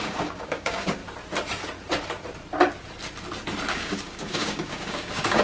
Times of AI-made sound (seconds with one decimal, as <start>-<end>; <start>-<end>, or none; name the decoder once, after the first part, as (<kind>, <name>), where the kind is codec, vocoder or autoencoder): 0.0-1.0 (codec, DAC); 3.7-5.4